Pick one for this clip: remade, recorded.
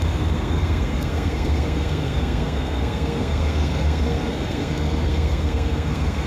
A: remade